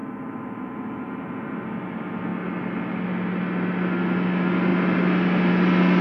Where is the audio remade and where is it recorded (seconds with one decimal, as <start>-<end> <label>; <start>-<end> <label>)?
0.0-6.0 recorded